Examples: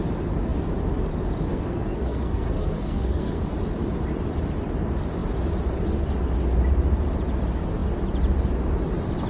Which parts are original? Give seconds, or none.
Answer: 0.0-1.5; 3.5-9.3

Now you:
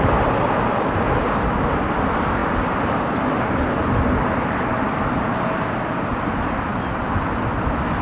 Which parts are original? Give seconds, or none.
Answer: 0.0-8.0

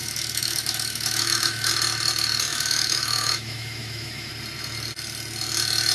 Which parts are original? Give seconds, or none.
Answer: 1.7-2.5; 4.3-5.9

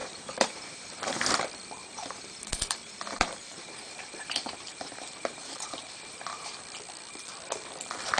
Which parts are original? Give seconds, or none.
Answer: 1.3-1.8; 6.6-8.2

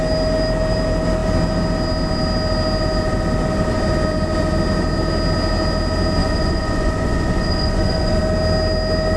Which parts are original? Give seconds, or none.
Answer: 0.0-6.2; 8.2-9.2